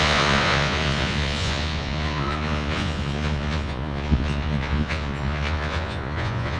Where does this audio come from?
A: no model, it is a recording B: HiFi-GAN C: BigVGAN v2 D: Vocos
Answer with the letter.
D